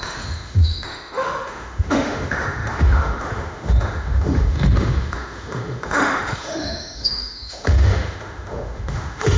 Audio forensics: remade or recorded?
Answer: remade